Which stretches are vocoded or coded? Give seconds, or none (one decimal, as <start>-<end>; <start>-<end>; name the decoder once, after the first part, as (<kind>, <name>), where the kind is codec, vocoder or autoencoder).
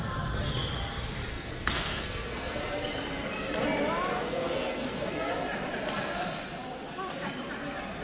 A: 1.3-2.6 (codec, SNAC); 4.1-5.3